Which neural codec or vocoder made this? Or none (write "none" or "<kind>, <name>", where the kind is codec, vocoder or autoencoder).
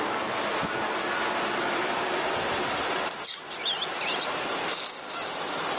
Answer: none